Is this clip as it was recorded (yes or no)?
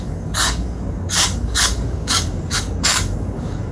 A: no